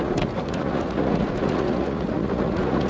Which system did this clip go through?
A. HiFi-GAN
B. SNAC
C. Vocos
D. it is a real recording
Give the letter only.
C